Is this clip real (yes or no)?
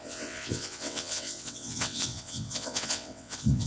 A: no